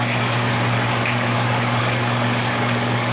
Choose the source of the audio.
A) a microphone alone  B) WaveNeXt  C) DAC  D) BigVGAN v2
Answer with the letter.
C